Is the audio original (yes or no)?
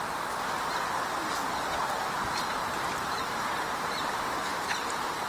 yes